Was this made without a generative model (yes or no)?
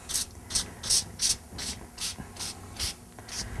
yes